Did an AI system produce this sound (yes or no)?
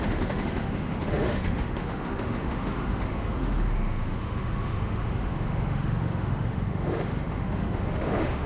yes